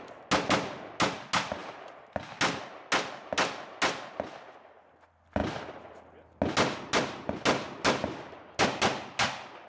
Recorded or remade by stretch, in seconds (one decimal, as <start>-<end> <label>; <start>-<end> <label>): 0.0-9.7 recorded